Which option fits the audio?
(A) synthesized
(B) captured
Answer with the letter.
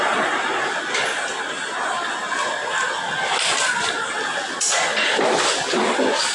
B